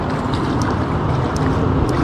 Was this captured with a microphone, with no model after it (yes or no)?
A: yes